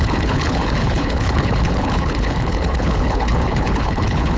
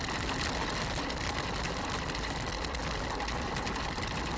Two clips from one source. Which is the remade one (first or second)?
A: first